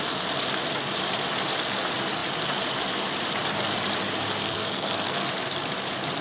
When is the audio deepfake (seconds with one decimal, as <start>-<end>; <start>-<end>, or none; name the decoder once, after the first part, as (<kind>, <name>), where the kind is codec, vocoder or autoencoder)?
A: 4.4-5.3 (codec, SNAC)